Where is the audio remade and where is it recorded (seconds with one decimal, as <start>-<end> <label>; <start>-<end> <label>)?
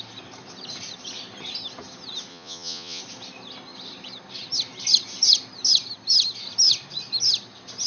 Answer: 0.0-2.3 recorded; 2.3-3.0 remade; 3.0-7.9 recorded